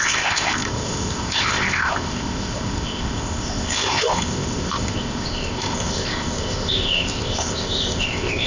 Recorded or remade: remade